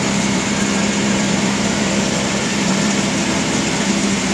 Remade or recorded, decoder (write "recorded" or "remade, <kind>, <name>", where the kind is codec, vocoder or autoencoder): remade, vocoder, BigVGAN v2